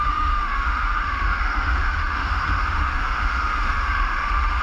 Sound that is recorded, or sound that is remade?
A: remade